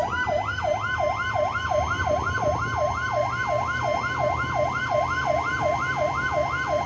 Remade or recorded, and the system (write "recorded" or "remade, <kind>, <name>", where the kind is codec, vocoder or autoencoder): recorded